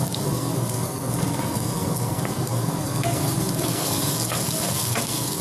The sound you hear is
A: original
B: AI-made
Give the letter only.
B